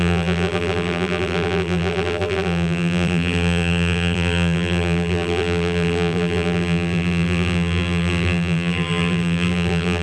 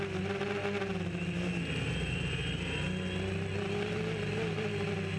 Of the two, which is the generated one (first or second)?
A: first